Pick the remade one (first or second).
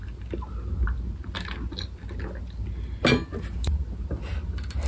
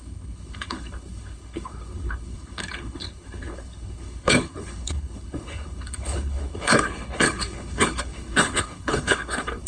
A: second